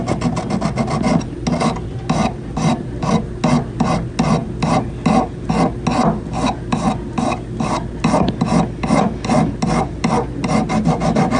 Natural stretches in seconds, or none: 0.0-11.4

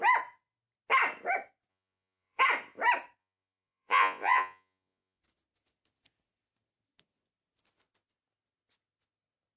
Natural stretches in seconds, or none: 0.0-1.7; 2.4-3.2; 5.2-9.6

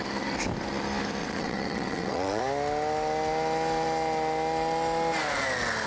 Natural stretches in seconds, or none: 0.0-1.2; 2.4-5.9

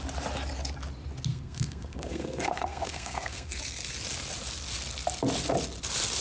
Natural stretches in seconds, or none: 0.0-1.3; 3.6-6.2